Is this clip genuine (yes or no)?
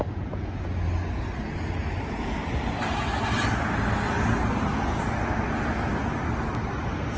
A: yes